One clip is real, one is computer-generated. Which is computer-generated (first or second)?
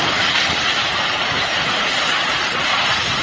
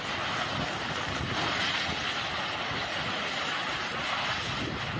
first